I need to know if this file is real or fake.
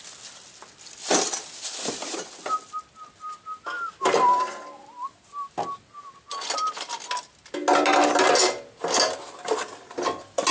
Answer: real